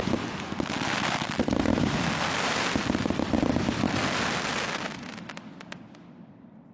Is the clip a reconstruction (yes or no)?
no